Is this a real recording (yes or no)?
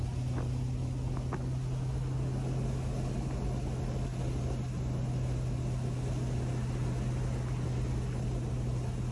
yes